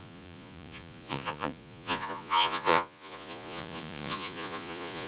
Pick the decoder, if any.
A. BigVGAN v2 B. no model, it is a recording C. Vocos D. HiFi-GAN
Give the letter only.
C